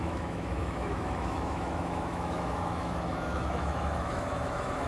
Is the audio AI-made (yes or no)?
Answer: yes